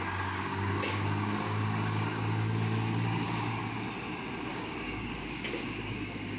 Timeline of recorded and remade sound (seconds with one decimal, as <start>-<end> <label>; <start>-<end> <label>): 0.0-3.6 remade; 3.6-4.5 recorded; 4.5-6.4 remade